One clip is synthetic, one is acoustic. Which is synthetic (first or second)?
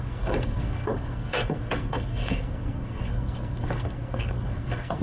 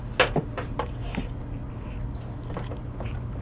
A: first